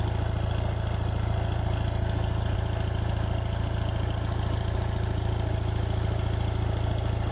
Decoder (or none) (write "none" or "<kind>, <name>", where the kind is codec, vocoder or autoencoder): none